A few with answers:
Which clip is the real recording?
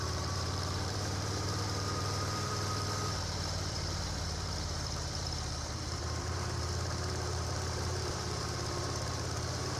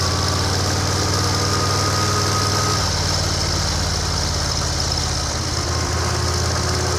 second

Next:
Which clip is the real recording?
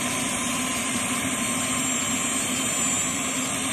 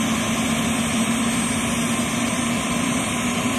second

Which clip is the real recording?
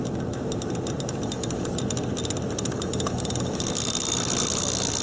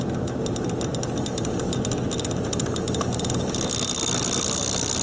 second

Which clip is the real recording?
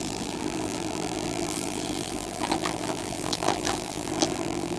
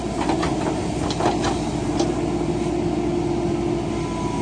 second